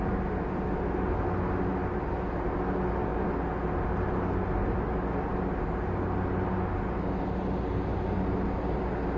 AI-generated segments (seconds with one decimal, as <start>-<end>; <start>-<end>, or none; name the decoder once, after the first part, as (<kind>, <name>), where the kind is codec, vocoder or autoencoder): none